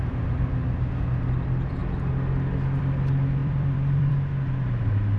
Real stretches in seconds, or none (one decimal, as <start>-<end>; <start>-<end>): 0.0-3.4; 4.1-5.2